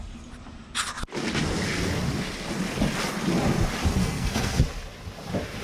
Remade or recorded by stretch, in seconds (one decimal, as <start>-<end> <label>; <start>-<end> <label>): 0.0-4.0 recorded; 4.0-4.6 remade; 4.6-5.6 recorded

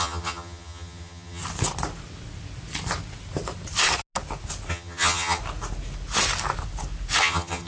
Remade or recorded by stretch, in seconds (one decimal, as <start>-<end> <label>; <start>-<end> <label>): 0.0-1.4 remade; 1.4-4.7 recorded; 4.7-5.4 remade; 5.4-7.2 recorded; 7.2-7.7 remade

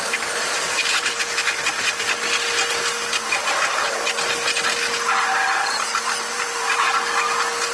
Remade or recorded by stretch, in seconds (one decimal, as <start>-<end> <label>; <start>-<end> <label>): 0.0-1.2 remade; 1.2-3.4 recorded; 3.4-4.0 remade; 4.0-6.3 recorded; 6.3-6.9 remade; 6.9-7.7 recorded

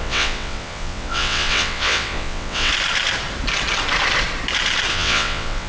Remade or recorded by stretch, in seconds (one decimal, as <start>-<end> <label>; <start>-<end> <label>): 0.0-2.7 remade; 2.7-4.9 recorded; 4.9-5.7 remade

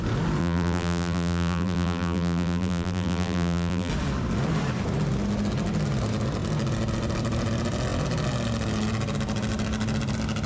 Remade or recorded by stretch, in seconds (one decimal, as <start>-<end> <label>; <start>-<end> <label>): 0.0-0.4 recorded; 0.4-3.9 remade; 3.9-10.5 recorded

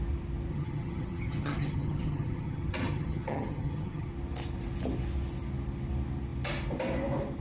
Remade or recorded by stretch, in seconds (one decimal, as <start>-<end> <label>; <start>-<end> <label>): 0.0-0.5 recorded; 0.5-4.1 remade; 4.1-7.4 recorded